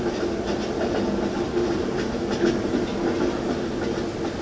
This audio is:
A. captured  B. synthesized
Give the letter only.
A